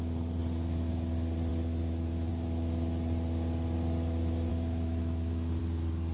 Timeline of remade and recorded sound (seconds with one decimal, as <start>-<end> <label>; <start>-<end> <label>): 0.0-1.5 recorded; 1.5-2.3 remade; 2.3-4.5 recorded; 4.5-5.6 remade; 5.6-6.1 recorded